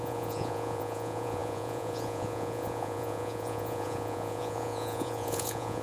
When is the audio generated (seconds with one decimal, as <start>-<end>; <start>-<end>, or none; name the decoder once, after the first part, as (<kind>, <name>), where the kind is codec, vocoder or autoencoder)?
0.0-5.8 (vocoder, Vocos)